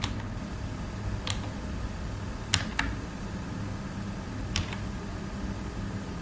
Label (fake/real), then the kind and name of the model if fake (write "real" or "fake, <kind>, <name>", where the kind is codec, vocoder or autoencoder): real